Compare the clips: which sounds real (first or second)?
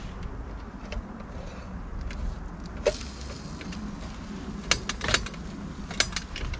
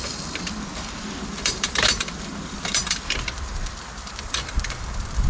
first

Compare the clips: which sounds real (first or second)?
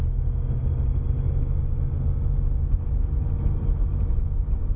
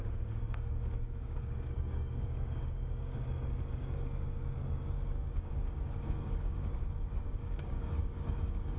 first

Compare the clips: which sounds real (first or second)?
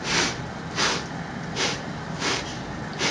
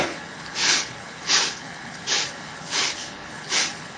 first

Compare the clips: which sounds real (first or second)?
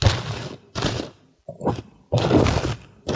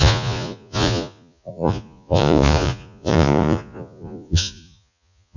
first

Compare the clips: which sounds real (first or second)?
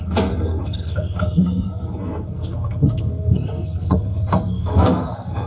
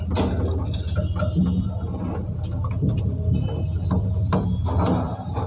second